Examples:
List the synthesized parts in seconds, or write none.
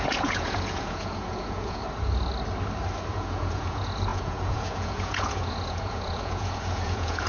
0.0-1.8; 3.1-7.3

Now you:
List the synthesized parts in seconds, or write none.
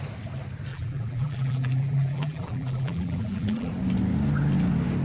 0.7-3.7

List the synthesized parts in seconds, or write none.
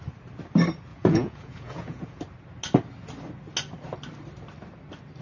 0.9-2.2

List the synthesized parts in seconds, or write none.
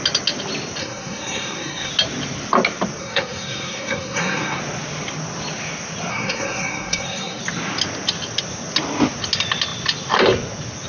0.8-1.9; 3.0-4.6; 6.1-7.4